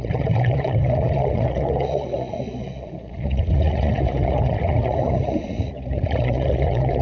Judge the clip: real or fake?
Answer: fake